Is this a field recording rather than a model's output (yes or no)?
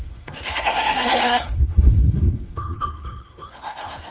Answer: no